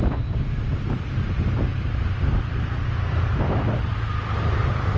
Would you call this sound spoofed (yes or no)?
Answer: no